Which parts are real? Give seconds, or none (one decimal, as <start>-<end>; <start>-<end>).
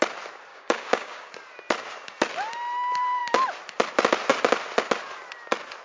0.0-0.5; 1.3-5.8